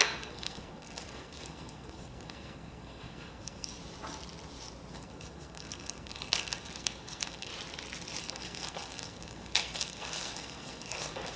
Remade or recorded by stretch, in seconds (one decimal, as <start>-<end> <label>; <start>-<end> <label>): 0.0-3.8 remade; 3.8-4.9 recorded; 4.9-7.5 remade; 7.5-8.2 recorded; 8.2-11.4 remade